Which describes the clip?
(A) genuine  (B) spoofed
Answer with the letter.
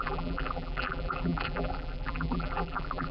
B